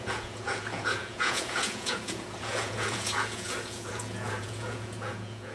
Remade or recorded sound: remade